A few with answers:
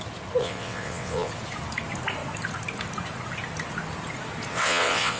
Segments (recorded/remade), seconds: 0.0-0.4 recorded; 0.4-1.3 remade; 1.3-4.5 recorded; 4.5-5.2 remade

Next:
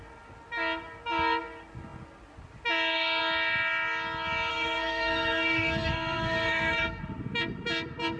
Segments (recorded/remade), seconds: 0.0-4.5 recorded; 4.5-7.0 remade; 7.0-8.2 recorded

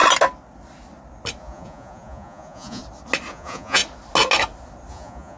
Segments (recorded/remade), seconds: 0.0-1.4 recorded; 1.4-2.8 remade; 2.8-3.3 recorded; 3.3-3.8 remade; 3.8-4.9 recorded; 4.9-5.4 remade